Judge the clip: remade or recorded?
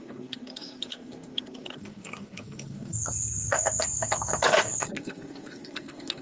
remade